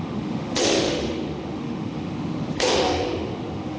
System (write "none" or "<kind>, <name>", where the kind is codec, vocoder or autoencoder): autoencoder, DAC-VAE